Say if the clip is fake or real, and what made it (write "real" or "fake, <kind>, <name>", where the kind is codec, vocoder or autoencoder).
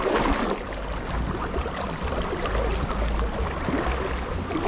real